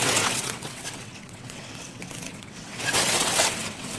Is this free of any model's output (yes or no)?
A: no